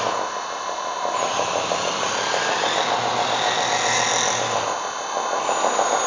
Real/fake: real